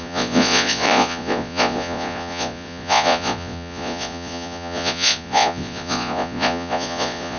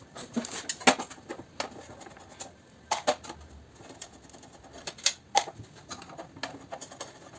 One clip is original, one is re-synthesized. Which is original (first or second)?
second